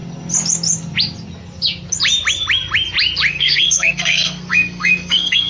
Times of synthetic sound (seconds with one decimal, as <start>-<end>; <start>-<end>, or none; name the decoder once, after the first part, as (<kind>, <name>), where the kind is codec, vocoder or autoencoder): 3.3-5.5 (codec, SNAC)